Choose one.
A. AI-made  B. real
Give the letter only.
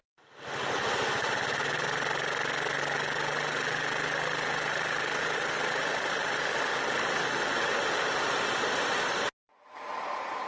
B